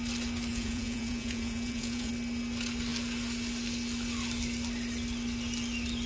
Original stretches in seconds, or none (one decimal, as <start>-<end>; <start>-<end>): 0.0-0.5; 2.1-6.1